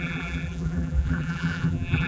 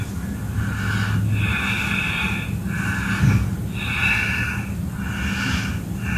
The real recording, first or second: second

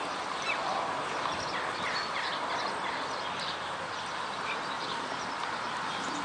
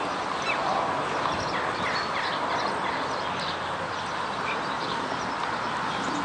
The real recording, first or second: second